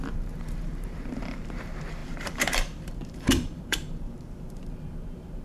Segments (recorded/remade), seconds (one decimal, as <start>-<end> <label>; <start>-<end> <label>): 0.0-5.4 remade